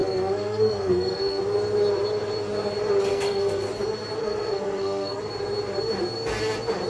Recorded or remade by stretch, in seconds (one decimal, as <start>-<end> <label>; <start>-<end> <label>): 0.0-1.4 remade; 1.4-3.1 recorded; 3.1-3.7 remade; 3.7-4.2 recorded; 4.2-5.2 remade; 5.2-6.9 recorded

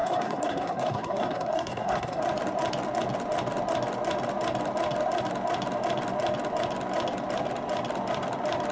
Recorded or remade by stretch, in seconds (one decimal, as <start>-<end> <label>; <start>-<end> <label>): 0.0-2.2 remade; 2.2-8.7 recorded